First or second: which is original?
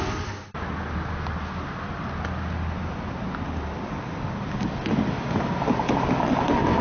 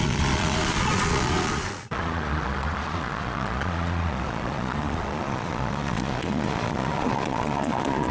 first